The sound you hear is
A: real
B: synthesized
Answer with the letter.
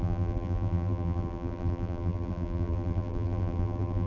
B